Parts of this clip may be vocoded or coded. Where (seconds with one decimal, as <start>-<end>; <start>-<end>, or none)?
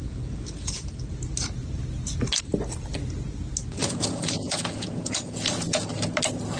0.0-0.8; 3.8-5.9